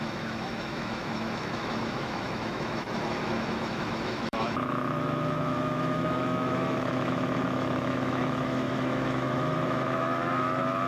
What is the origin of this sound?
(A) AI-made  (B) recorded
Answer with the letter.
A